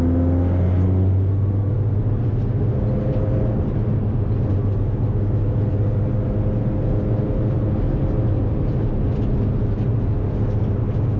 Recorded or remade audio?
recorded